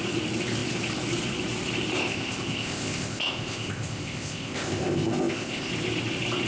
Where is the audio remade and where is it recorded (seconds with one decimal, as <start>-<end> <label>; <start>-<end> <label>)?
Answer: 0.0-2.0 recorded; 2.0-5.7 remade; 5.7-6.5 recorded